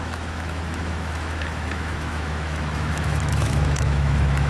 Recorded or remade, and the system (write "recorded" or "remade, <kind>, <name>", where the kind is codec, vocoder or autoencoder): remade, autoencoder, DAC-VAE